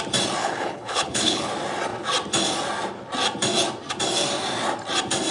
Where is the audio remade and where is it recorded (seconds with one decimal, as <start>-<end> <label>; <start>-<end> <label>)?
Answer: 0.0-0.4 recorded; 0.4-1.5 remade; 1.5-5.3 recorded